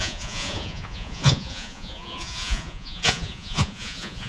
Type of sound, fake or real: fake